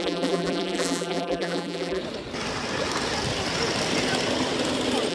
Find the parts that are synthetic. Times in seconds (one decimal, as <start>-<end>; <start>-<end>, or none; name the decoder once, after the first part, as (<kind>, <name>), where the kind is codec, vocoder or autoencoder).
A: 0.0-2.0 (vocoder, BigVGAN v2)